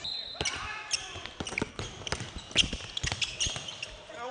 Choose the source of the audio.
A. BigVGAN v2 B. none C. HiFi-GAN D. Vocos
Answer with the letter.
B